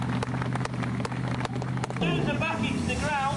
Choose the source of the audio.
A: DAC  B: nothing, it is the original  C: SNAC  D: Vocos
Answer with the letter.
B